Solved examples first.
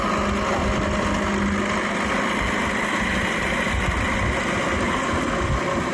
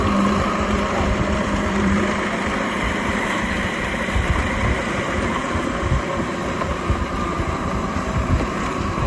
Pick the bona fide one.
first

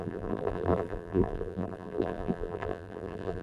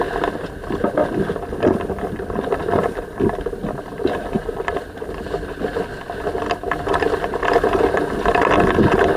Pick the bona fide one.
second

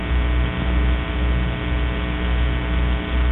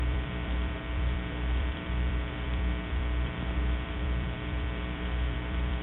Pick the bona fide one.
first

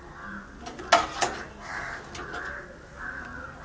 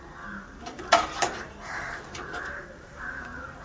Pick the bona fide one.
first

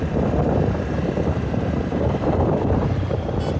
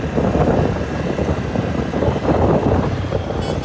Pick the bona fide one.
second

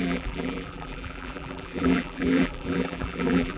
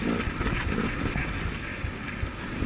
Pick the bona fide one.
second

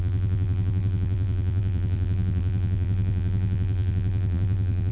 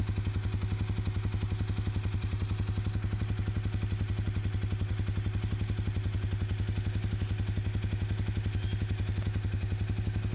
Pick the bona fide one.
second